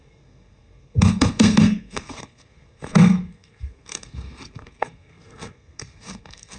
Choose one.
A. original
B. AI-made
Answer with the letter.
B